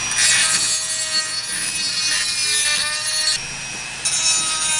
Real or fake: real